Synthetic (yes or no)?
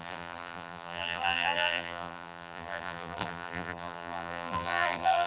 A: yes